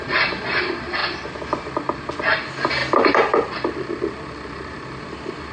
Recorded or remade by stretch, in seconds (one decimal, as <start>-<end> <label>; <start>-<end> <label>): 0.0-2.8 recorded; 2.8-5.0 remade; 5.0-5.5 recorded